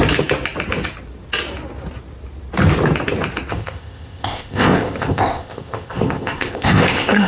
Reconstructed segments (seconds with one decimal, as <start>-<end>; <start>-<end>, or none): 3.5-7.3